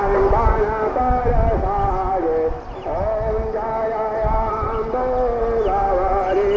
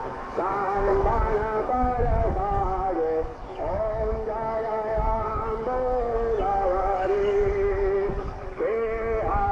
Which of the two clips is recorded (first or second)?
first